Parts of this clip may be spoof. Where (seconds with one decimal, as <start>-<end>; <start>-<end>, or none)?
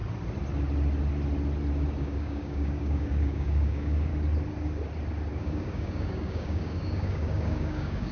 2.0-4.1; 5.4-8.1